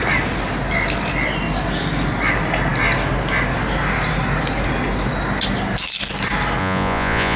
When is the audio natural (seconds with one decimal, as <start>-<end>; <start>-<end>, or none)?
0.0-6.6